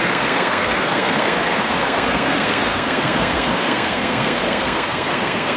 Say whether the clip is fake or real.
fake